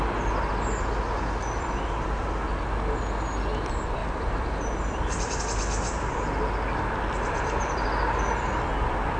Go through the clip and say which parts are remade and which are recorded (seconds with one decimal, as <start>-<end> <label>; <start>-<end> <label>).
0.0-4.0 recorded; 4.0-5.4 remade; 5.4-9.2 recorded